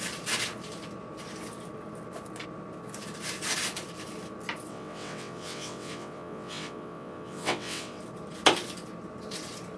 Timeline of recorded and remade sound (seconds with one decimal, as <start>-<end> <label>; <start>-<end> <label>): 0.0-4.7 recorded; 4.7-8.0 remade; 8.0-9.8 recorded